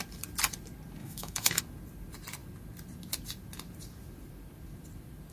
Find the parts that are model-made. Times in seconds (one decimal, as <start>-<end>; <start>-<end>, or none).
1.0-1.6